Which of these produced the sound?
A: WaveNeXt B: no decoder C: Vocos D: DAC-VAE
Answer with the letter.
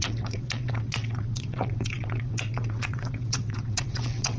A